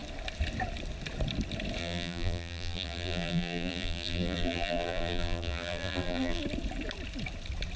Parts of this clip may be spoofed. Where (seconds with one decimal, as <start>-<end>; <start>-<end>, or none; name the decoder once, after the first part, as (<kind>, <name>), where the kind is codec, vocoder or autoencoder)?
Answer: 1.8-6.4 (vocoder, BigVGAN v2)